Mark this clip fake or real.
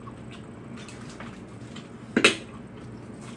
real